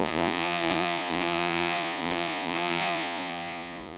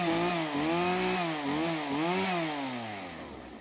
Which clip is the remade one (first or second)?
first